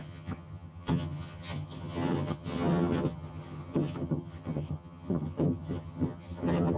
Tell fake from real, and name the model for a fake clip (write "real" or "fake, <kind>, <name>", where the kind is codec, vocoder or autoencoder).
fake, vocoder, HiFi-GAN